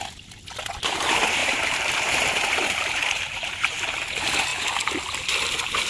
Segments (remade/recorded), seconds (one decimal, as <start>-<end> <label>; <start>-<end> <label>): 0.0-1.4 recorded; 1.4-3.8 remade; 3.8-5.9 recorded